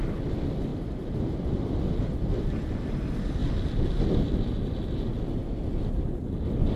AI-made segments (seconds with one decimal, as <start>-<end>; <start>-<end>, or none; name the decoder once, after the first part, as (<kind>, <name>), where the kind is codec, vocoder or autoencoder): none